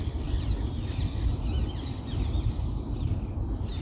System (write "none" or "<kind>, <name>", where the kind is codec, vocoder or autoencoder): none